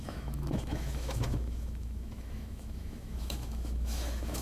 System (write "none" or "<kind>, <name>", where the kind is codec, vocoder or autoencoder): autoencoder, DAC-VAE